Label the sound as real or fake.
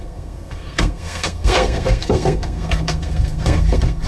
fake